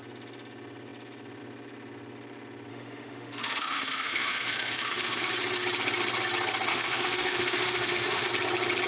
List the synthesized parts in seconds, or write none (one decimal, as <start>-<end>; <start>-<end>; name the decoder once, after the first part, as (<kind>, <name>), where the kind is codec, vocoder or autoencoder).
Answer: 2.7-5.3 (autoencoder, DAC-VAE); 6.7-8.3